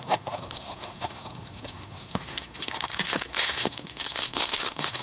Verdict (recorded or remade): remade